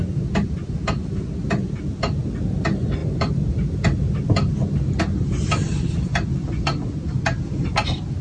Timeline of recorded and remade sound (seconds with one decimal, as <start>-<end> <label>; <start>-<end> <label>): 0.0-8.2 recorded